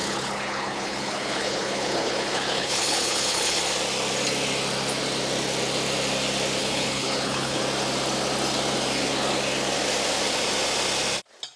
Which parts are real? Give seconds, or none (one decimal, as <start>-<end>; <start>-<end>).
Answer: 3.6-6.6; 7.6-11.6